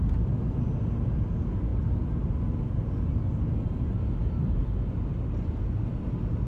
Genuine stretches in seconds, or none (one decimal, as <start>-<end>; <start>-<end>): 0.0-6.5